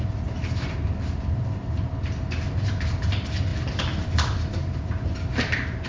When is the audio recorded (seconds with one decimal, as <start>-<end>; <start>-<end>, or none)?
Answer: 0.0-3.5; 4.1-5.9